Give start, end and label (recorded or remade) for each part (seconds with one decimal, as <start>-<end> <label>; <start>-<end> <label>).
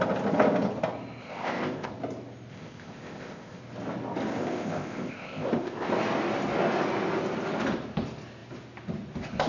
0.0-1.2 recorded; 1.2-1.9 remade; 1.9-2.5 recorded; 2.5-3.6 remade; 3.6-4.4 recorded; 4.4-5.9 remade; 5.9-9.5 recorded